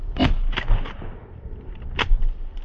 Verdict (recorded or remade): recorded